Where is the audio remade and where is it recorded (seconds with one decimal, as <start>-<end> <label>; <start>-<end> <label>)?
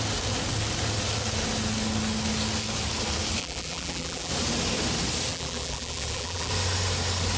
0.0-3.4 recorded; 3.4-4.3 remade; 4.3-5.3 recorded; 5.3-6.5 remade; 6.5-7.4 recorded